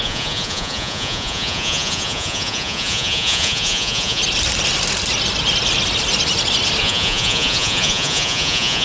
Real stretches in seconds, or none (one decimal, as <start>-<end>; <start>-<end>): 4.2-6.8